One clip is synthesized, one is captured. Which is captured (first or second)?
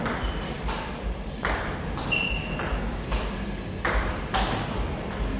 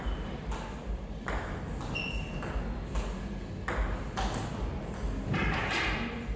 second